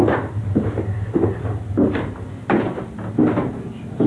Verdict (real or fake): real